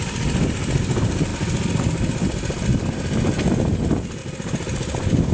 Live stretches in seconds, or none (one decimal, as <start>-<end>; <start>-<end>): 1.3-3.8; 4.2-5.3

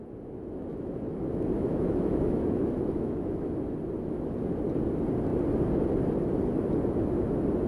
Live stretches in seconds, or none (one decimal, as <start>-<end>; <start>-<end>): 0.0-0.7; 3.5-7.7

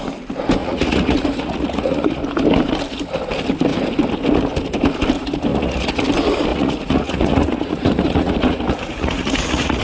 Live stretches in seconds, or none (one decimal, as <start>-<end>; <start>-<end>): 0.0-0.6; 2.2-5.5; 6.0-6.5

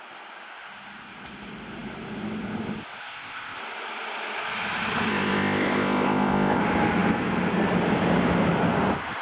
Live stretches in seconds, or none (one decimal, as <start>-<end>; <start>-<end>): 0.0-3.0; 3.6-5.1; 6.6-9.2

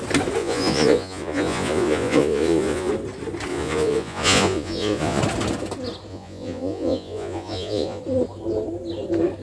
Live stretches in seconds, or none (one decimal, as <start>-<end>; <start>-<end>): 0.0-0.4; 2.9-3.5; 5.2-6.1; 8.0-9.4

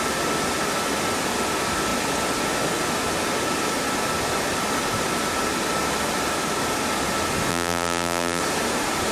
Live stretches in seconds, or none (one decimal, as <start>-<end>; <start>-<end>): 0.0-7.5; 8.4-9.1

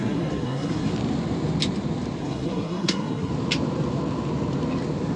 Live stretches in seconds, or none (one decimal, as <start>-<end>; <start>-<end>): 0.9-2.2; 3.3-5.2

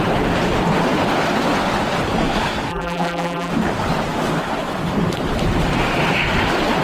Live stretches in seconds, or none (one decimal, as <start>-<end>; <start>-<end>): 0.0-2.7; 3.5-6.8